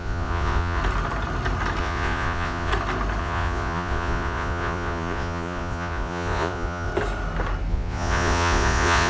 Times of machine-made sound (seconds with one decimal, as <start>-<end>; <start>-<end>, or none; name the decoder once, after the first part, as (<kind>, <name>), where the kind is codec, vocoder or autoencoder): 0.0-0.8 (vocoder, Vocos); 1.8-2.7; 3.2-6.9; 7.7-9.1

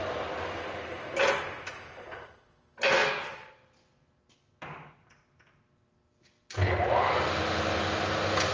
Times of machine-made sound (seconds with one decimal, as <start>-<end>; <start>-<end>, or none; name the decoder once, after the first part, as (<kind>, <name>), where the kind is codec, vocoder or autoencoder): none

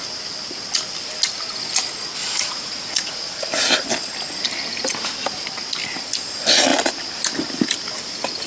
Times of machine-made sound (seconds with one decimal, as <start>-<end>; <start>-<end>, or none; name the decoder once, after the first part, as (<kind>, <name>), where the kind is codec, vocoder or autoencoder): 2.2-3.7 (vocoder, Vocos)

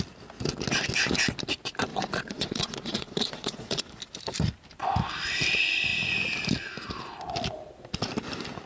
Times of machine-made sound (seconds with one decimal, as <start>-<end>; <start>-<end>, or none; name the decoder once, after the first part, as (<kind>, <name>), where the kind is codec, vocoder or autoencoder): 1.9-3.8 (vocoder, Vocos)

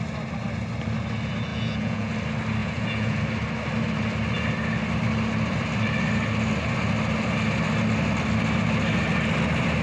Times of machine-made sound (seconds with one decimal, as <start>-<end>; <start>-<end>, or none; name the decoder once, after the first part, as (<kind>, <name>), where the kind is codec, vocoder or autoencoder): 1.5-2.1 (vocoder, Vocos); 2.6-3.2